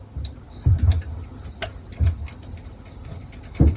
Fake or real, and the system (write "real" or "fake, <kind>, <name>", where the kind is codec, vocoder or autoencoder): real